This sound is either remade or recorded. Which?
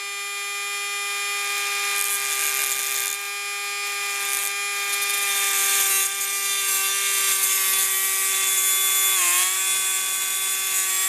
recorded